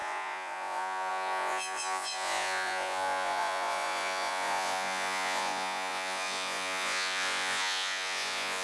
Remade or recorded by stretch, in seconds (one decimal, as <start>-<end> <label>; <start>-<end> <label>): 0.0-8.6 remade